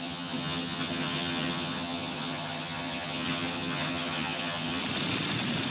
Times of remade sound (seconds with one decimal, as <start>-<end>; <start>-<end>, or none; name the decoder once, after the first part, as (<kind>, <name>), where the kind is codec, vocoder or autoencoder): 0.0-4.8 (vocoder, HiFi-GAN)